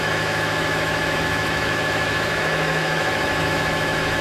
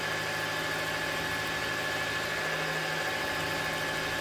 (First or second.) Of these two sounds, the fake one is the first